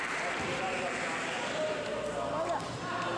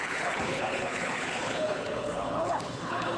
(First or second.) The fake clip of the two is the second